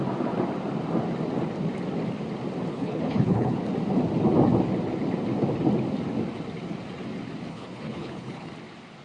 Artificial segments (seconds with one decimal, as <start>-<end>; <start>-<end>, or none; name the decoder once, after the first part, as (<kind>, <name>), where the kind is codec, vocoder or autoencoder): 2.7-3.6 (codec, HILCodec); 7.5-8.5